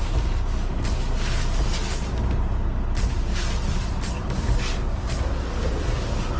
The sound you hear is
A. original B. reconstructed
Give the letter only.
A